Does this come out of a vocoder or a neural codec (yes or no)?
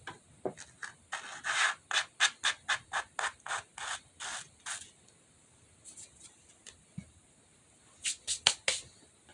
no